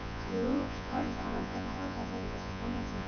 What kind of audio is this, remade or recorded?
remade